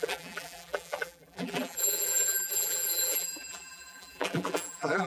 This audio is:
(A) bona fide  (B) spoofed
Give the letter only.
B